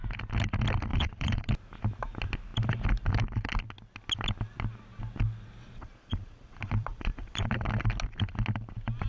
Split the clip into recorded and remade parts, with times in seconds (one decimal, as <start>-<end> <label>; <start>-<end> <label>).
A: 0.0-0.9 recorded; 0.9-1.5 remade; 1.5-5.6 recorded; 5.6-7.5 remade; 7.5-9.1 recorded